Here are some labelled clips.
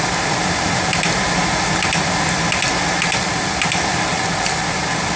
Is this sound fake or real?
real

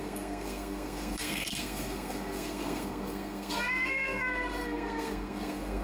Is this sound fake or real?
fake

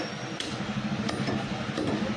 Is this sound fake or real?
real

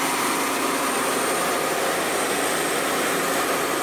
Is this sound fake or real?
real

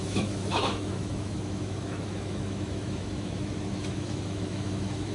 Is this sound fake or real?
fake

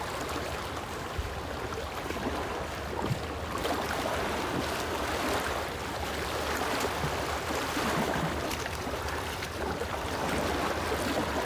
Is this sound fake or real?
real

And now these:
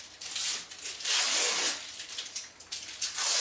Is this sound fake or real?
real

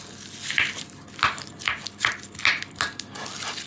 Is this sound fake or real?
real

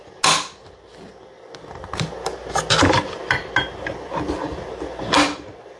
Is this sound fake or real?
real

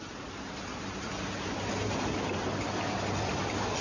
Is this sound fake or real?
real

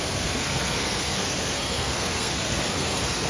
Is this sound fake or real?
fake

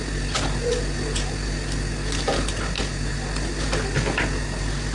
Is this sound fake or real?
real